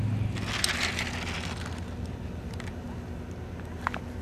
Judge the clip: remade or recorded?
recorded